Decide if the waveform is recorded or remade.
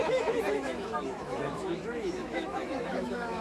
remade